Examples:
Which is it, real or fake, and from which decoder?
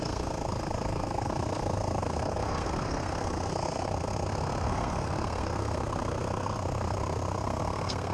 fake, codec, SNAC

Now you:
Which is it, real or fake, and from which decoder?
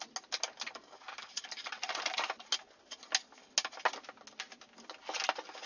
real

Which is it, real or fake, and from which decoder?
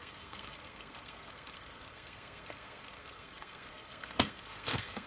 fake, codec, SNAC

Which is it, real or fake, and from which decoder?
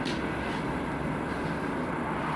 real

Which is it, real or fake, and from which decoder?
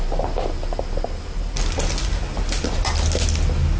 real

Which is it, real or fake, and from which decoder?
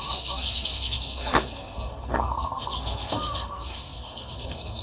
fake, codec, SNAC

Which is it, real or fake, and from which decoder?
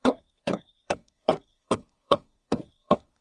fake, codec, SNAC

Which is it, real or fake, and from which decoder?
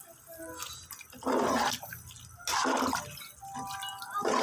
real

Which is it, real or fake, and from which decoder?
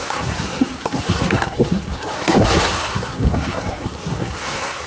fake, codec, SNAC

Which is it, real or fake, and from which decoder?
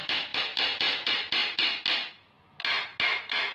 real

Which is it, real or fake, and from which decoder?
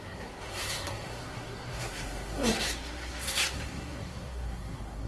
fake, codec, SNAC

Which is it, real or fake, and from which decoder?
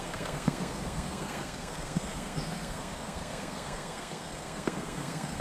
fake, codec, SNAC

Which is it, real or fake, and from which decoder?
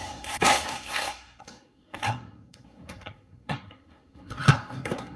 fake, codec, SNAC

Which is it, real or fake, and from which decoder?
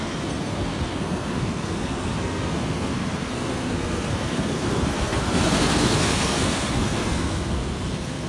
fake, codec, SNAC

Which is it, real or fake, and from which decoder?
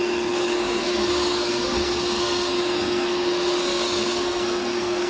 fake, codec, SNAC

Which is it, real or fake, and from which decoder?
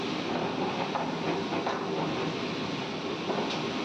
real